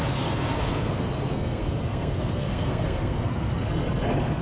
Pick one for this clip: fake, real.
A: fake